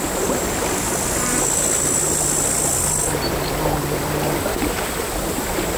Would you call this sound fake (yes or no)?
no